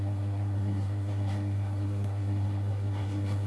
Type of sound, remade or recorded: remade